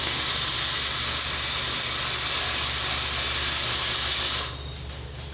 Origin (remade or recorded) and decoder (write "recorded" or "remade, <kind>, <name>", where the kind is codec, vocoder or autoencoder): recorded